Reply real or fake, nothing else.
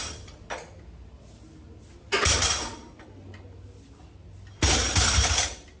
real